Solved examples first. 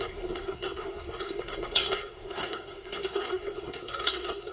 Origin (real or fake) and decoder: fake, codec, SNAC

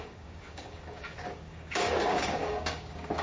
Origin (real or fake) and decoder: fake, codec, DAC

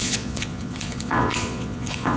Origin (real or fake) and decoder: fake, vocoder, Vocos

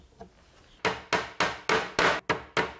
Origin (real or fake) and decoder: real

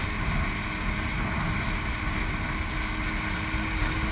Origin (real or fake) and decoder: real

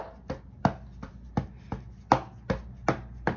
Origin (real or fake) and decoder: real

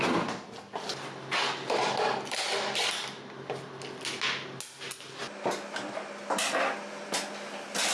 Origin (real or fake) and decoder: real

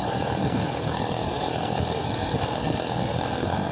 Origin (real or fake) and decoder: fake, codec, SNAC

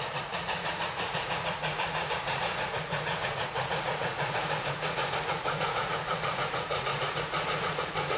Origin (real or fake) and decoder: fake, vocoder, Vocos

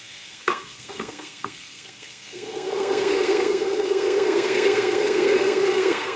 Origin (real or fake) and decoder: fake, codec, SNAC